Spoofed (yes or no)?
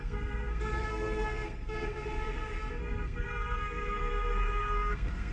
yes